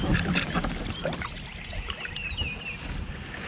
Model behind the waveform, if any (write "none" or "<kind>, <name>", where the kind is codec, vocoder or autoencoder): none